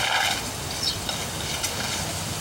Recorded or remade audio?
recorded